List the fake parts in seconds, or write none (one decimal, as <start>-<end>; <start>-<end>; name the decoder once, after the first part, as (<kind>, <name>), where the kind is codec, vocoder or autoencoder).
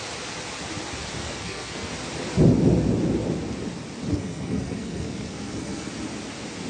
1.2-1.9 (codec, SNAC); 4.1-5.9